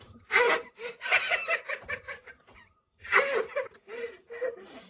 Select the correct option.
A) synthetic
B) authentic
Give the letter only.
B